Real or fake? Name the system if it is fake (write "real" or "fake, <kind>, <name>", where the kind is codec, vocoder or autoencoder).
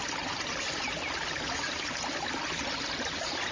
real